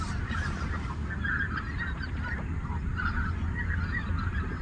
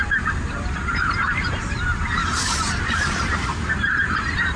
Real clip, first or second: first